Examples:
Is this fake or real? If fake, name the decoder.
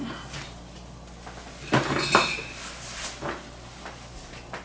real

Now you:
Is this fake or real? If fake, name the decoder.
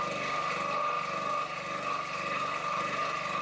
real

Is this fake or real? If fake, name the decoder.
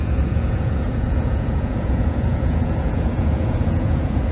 fake, vocoder, Vocos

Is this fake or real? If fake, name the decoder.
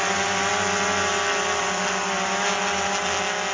real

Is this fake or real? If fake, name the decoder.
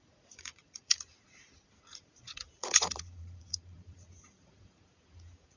fake, vocoder, Vocos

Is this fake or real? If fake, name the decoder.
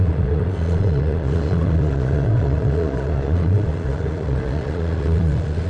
fake, vocoder, Vocos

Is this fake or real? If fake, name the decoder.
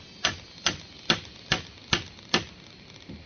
real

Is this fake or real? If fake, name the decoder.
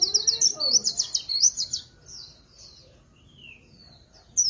real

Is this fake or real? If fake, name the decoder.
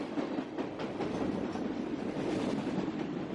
real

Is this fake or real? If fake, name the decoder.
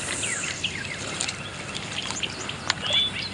real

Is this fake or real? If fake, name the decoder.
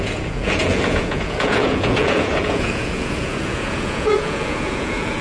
fake, vocoder, Vocos